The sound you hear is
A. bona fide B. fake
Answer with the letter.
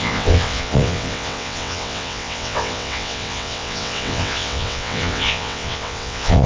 B